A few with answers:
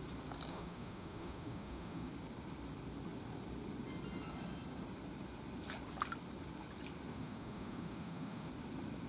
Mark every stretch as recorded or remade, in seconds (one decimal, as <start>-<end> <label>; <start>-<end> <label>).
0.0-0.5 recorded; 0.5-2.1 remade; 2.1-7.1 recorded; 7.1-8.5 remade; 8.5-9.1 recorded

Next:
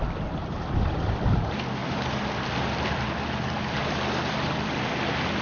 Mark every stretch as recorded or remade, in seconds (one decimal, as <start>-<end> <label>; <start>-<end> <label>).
0.0-5.4 recorded

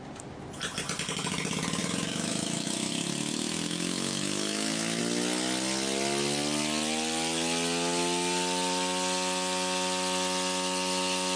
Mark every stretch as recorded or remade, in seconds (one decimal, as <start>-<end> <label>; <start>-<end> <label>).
0.0-1.8 recorded; 1.8-5.0 remade; 5.0-11.4 recorded